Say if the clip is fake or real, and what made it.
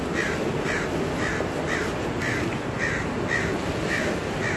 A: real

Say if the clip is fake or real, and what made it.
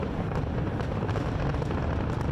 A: real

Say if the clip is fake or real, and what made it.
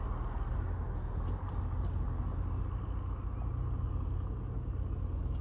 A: real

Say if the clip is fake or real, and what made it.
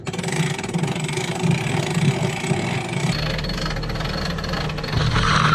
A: real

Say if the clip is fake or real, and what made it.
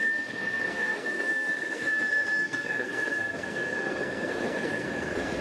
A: fake, codec, SNAC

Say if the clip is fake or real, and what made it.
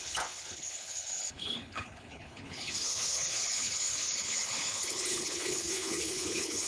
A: fake, codec, HILCodec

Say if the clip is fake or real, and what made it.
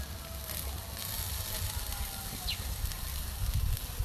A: real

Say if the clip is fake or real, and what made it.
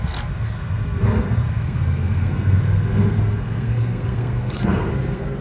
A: fake, codec, SNAC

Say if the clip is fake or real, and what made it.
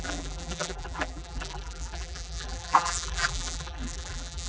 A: fake, vocoder, BigVGAN v2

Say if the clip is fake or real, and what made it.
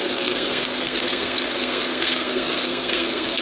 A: fake, codec, SNAC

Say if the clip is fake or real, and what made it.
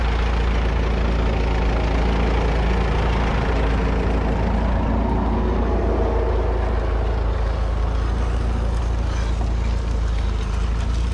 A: real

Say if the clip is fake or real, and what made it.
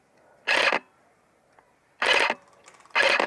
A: real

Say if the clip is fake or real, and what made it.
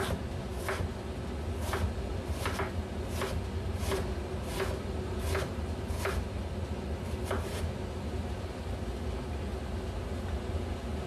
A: real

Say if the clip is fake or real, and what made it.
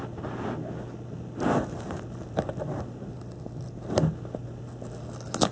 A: real